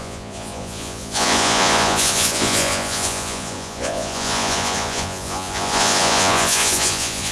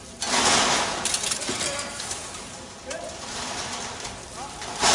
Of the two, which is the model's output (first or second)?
first